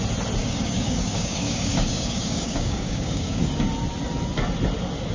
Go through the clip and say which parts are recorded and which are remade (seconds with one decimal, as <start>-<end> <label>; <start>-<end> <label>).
0.0-0.4 recorded; 0.4-3.5 remade; 3.5-5.1 recorded